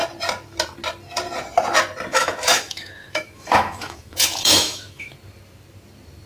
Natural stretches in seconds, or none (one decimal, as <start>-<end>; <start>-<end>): 0.0-2.1; 5.1-6.3